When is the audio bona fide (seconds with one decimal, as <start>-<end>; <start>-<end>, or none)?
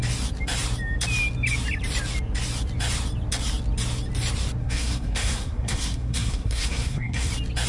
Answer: 0.0-4.6; 7.3-7.7